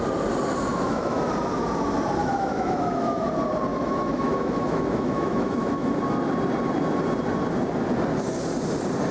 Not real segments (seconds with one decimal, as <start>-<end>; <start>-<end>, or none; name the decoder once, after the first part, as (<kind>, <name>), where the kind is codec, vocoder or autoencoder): 0.7-1.3 (autoencoder, DAC-VAE); 2.2-3.3; 3.7-6.0

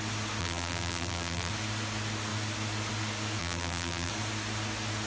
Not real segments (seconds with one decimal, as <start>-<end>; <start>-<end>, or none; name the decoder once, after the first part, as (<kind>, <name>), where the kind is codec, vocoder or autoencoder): 0.4-1.5 (vocoder, BigVGAN v2); 3.4-4.1

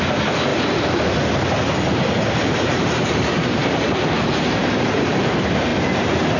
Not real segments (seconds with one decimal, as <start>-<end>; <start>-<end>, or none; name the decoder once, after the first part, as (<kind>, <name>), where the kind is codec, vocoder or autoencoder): 0.0-0.5 (vocoder, BigVGAN v2); 1.9-6.4